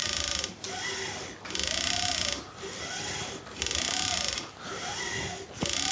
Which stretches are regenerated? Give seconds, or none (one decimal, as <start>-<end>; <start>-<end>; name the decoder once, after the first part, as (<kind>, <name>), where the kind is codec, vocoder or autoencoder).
none